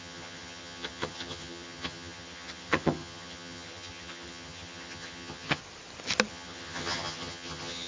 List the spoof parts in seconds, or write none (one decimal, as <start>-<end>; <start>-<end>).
0.0-5.6; 6.3-7.9